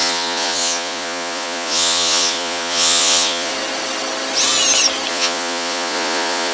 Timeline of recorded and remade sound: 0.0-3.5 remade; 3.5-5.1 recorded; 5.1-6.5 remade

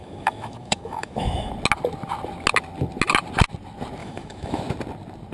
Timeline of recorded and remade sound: 0.0-1.5 remade; 1.5-4.0 recorded; 4.0-4.6 remade; 4.6-5.3 recorded

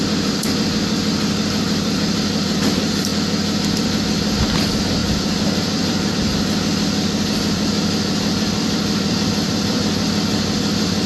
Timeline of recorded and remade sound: 0.0-3.1 remade; 3.1-3.7 recorded; 3.7-11.1 remade

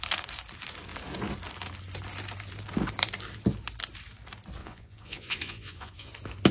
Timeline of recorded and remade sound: 0.0-4.6 recorded; 4.6-6.1 remade; 6.1-6.5 recorded

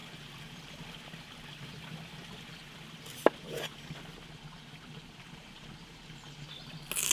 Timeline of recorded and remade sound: 0.0-7.1 recorded

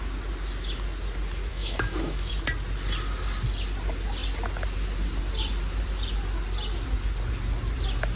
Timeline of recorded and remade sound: 0.0-1.5 recorded; 1.5-2.3 remade; 2.3-8.2 recorded

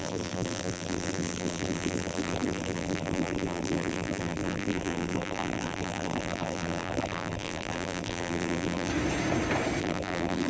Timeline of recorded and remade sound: 0.0-8.9 remade; 8.9-9.8 recorded; 9.8-10.5 remade

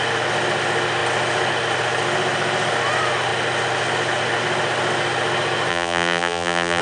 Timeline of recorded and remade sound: 0.0-5.7 recorded; 5.7-6.8 remade